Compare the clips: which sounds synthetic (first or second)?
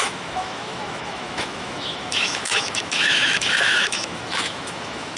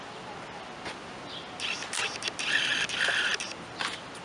first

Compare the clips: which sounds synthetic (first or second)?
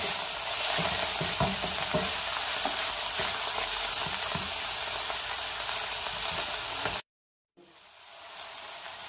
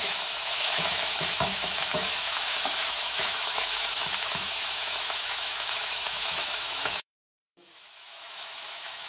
second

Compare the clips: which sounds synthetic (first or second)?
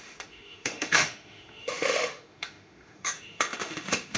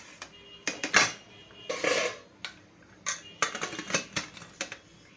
first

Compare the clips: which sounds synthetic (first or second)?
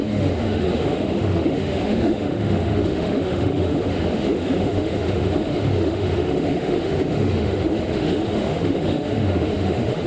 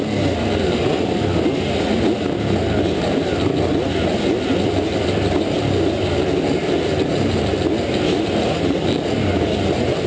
first